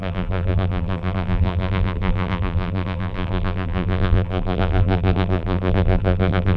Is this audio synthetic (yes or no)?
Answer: yes